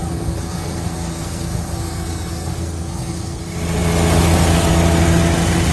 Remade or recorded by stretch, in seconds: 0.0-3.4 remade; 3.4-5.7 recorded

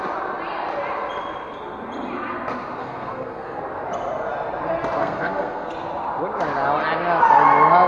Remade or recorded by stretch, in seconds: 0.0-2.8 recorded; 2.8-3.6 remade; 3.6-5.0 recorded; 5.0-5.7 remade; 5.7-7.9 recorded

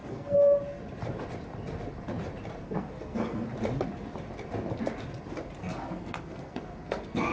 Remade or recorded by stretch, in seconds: 0.0-0.6 remade; 0.6-2.6 recorded; 2.6-3.5 remade; 3.5-5.6 recorded; 5.6-7.3 remade

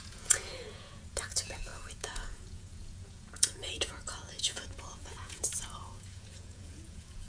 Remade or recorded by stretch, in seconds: 0.0-7.3 remade